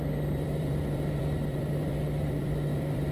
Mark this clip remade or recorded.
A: remade